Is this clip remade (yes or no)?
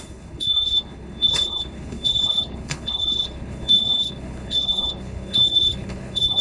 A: yes